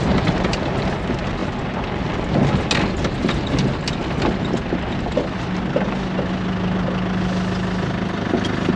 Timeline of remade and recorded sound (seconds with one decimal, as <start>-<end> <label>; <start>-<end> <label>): 0.0-8.8 recorded